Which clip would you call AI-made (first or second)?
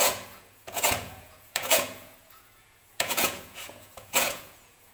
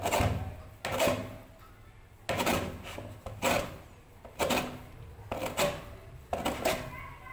first